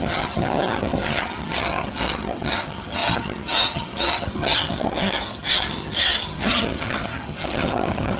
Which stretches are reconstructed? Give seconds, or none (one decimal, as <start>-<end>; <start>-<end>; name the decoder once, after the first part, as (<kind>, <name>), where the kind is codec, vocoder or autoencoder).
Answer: 0.0-8.2 (vocoder, HiFi-GAN)

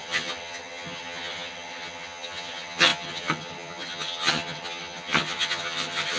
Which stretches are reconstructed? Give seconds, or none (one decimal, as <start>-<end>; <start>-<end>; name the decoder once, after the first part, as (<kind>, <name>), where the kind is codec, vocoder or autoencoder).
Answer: 0.0-6.2 (vocoder, HiFi-GAN)

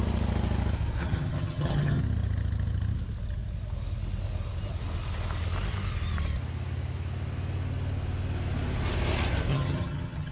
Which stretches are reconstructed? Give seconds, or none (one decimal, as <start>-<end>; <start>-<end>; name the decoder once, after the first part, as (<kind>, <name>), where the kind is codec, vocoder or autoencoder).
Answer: 1.0-2.0 (vocoder, HiFi-GAN); 9.5-10.3

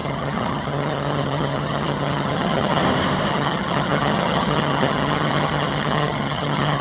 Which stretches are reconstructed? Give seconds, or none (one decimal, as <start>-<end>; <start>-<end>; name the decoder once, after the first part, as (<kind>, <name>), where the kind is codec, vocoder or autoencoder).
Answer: 0.0-2.8 (vocoder, HiFi-GAN); 3.3-6.8

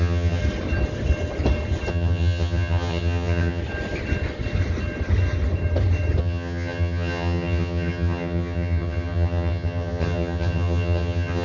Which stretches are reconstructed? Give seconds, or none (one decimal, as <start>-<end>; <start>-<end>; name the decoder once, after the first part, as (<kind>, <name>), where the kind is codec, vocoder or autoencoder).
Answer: 0.0-0.4 (vocoder, HiFi-GAN); 1.9-3.6; 6.2-11.4

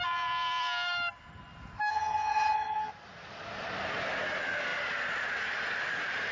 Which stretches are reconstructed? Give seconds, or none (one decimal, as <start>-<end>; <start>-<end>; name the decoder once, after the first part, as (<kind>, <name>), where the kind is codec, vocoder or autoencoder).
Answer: 1.9-2.9 (vocoder, HiFi-GAN)

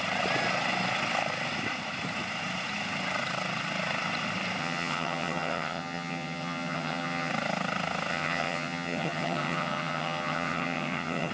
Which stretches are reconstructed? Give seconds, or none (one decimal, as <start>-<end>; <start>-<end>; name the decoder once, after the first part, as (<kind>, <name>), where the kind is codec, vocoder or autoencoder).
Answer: 4.6-7.3 (vocoder, HiFi-GAN); 8.1-11.3